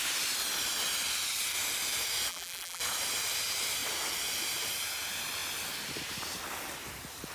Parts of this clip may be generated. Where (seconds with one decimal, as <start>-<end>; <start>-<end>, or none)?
2.3-2.8